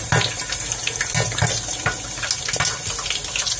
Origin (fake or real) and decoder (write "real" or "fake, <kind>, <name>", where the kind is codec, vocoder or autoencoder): real